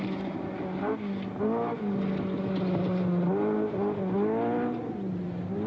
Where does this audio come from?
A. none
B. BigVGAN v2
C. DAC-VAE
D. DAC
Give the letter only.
A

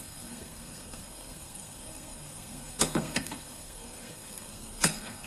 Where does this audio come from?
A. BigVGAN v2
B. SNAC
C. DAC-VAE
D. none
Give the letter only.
B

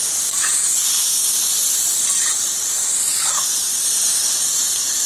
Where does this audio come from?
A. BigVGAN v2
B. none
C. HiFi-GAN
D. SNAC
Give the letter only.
A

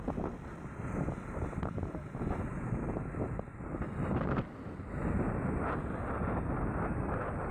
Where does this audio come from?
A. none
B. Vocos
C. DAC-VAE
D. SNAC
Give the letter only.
A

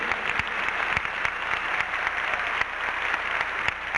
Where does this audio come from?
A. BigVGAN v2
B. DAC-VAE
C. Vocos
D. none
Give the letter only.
D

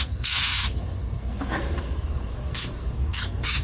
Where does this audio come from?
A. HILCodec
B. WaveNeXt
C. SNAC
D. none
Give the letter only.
C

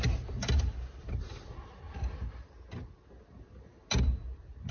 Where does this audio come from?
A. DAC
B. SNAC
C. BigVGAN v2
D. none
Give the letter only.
D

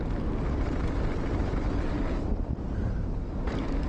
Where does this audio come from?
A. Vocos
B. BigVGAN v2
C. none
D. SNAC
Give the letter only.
C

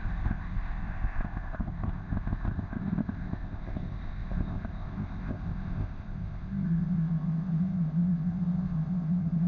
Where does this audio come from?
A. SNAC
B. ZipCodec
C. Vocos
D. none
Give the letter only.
B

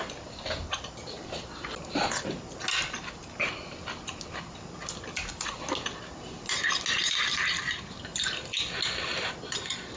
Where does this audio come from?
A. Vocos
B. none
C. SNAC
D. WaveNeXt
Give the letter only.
B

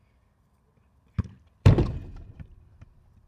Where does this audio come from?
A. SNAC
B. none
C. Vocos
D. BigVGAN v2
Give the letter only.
D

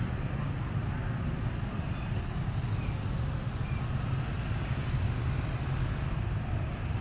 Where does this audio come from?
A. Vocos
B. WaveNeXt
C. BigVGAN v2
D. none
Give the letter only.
D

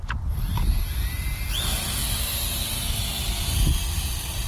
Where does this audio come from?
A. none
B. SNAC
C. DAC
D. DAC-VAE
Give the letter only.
A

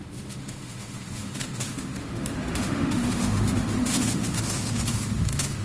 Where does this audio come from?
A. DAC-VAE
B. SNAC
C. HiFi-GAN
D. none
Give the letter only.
A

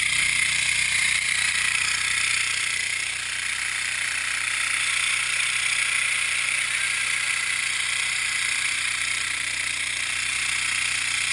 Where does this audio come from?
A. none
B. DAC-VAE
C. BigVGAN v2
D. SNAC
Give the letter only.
C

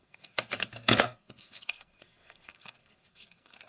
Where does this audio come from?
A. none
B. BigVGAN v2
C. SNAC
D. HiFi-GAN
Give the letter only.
C